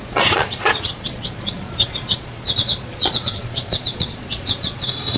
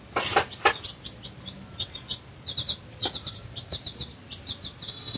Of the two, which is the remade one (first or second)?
first